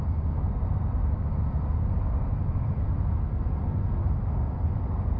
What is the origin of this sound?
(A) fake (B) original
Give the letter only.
B